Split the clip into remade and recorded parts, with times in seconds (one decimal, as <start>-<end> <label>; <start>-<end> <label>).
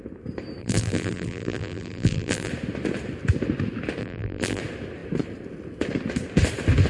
0.0-0.6 recorded; 0.6-2.5 remade; 2.5-4.0 recorded; 4.0-4.6 remade; 4.6-6.9 recorded